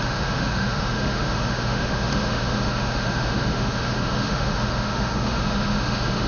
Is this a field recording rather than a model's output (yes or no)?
no